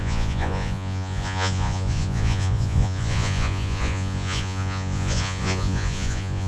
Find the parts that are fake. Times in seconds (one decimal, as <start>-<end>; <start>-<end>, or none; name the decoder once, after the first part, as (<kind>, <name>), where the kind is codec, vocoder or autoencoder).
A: 0.0-6.5 (vocoder, Vocos)

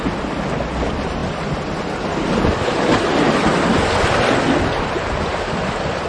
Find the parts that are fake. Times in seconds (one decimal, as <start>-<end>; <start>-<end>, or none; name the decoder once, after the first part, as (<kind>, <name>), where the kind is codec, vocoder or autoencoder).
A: none

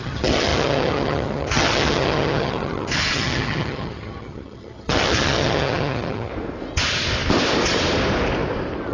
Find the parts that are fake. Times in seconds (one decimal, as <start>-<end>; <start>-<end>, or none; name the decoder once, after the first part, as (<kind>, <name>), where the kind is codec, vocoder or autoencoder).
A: 0.0-6.3 (vocoder, HiFi-GAN)

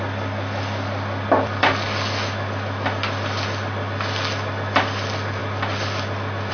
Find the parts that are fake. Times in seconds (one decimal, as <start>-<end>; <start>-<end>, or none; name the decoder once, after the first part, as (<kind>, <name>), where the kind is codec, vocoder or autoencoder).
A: none

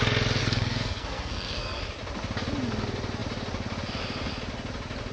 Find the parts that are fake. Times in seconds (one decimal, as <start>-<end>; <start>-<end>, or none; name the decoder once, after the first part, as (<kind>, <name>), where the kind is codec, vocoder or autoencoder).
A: 0.4-1.8 (codec, SNAC)

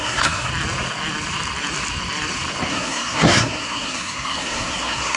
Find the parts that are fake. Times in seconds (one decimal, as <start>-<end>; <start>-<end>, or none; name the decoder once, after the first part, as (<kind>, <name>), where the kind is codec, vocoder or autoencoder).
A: 0.0-0.5 (codec, SNAC); 2.7-5.2